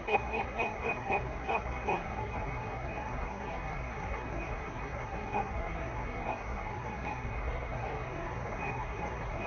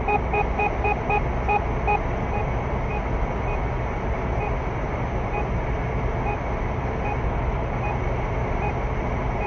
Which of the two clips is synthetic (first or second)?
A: first